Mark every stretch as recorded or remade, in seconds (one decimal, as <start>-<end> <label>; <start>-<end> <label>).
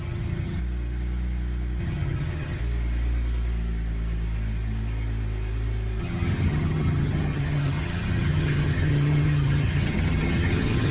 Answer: 0.0-0.6 remade; 0.6-1.8 recorded; 1.8-2.6 remade; 2.6-6.0 recorded; 6.0-10.9 remade